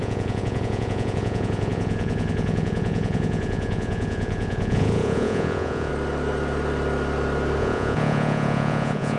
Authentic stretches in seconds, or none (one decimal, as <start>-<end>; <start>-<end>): 5.9-7.6